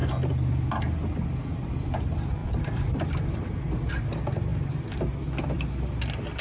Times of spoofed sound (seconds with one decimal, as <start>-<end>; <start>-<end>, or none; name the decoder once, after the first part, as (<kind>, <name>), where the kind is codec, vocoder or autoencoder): 0.0-0.7 (vocoder, BigVGAN v2); 2.4-3.9; 4.5-5.7